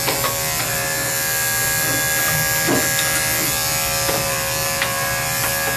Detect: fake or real real